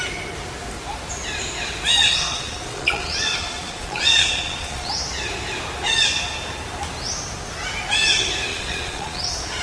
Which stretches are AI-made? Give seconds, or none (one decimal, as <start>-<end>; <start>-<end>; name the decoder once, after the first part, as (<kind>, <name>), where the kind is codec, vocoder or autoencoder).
2.0-4.9 (vocoder, Vocos); 8.5-9.6